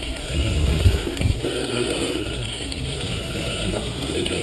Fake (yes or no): yes